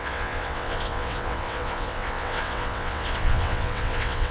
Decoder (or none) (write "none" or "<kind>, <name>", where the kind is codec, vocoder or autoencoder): vocoder, WaveNeXt